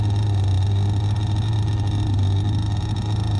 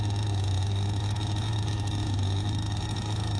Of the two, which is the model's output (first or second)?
second